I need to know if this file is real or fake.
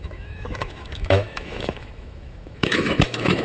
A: fake